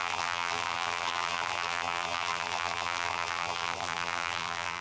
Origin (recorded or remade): remade